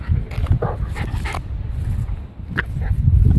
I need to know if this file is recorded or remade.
recorded